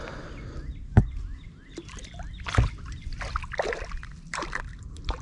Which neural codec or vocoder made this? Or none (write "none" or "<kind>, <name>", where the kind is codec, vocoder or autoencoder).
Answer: none